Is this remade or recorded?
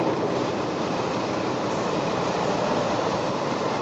remade